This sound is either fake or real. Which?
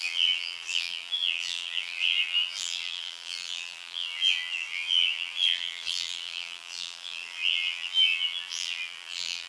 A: fake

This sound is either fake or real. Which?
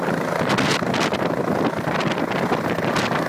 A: real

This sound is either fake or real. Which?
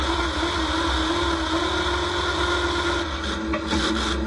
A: real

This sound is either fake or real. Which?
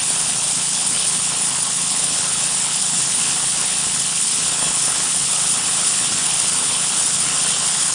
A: fake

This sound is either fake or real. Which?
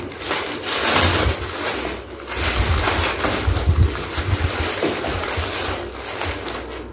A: real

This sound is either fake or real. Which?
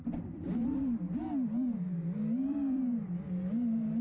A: real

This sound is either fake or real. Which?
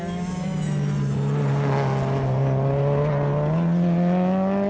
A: real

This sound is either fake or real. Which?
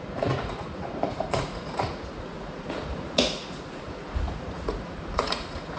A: fake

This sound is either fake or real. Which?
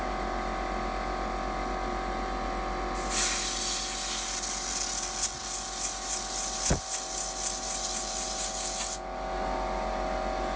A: real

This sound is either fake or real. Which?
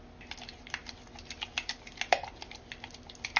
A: real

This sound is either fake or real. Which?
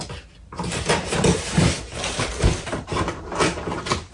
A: real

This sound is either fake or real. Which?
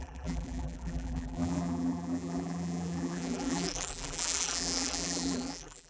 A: fake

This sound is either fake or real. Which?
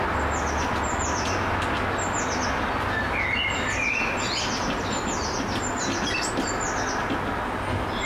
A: real